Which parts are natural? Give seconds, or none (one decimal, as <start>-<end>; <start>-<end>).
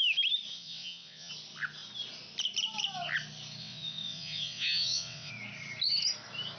0.0-0.5; 1.3-3.6; 5.3-6.6